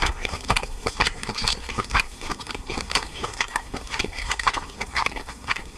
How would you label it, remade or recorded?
remade